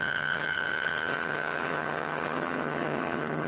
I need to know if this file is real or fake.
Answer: fake